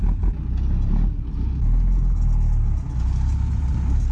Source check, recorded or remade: recorded